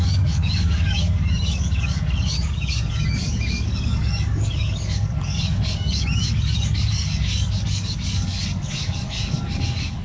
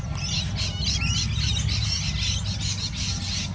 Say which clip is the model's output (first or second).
first